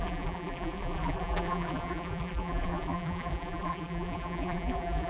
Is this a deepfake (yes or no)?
yes